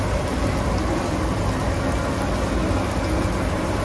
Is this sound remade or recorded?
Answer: recorded